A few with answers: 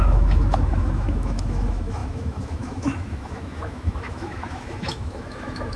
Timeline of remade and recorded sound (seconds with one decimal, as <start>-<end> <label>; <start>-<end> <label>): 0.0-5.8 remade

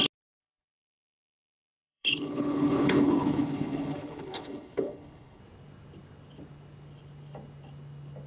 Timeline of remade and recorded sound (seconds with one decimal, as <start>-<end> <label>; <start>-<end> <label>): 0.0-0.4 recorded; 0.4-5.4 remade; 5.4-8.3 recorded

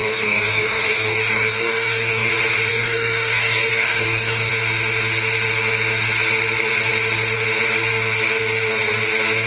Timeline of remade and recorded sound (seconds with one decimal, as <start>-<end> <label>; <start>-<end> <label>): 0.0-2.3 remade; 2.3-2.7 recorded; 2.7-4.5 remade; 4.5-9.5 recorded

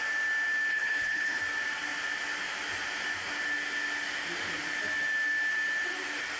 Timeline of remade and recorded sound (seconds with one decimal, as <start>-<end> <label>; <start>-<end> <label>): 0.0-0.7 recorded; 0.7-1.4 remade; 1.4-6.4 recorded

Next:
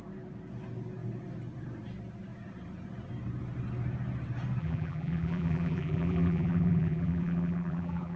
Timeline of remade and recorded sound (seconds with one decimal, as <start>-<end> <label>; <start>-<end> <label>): 0.0-4.6 recorded; 4.6-8.2 remade